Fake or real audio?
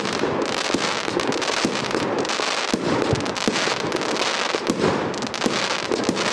real